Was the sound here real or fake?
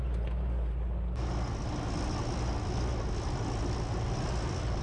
real